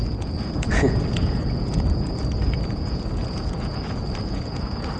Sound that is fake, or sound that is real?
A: fake